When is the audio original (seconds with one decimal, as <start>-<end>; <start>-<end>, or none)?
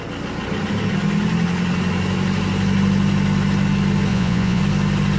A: 0.0-4.1; 4.6-5.2